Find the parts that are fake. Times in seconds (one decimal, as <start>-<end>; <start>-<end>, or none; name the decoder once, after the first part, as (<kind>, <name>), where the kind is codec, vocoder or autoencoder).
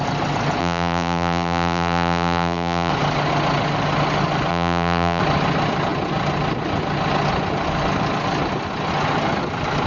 0.6-2.9 (vocoder, BigVGAN v2); 4.5-5.2